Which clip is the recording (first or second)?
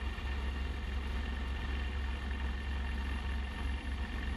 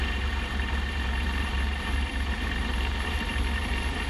first